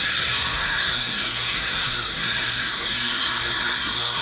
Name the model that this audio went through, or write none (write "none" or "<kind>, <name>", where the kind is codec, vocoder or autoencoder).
codec, SNAC